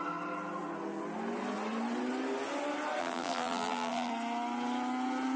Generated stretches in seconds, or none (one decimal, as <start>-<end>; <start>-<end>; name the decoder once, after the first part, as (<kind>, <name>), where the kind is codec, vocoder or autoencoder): 3.0-4.1 (vocoder, BigVGAN v2)